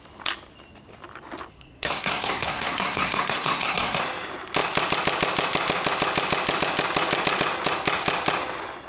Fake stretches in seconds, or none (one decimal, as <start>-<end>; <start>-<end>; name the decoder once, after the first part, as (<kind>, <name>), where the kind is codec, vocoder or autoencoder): 1.5-4.0 (codec, SNAC)